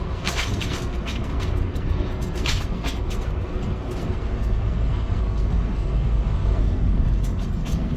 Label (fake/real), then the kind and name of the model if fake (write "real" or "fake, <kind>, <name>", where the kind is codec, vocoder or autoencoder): fake, codec, SNAC